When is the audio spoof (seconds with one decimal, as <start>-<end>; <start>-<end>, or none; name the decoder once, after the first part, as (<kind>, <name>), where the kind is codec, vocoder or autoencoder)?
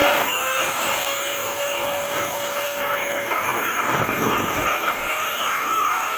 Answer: 0.0-6.2 (codec, DAC)